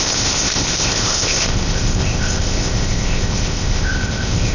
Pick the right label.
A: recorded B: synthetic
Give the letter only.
B